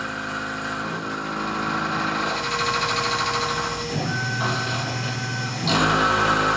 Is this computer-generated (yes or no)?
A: no